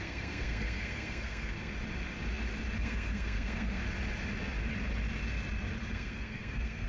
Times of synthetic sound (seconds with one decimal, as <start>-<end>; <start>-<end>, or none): 0.0-1.7; 2.8-3.8; 5.9-6.9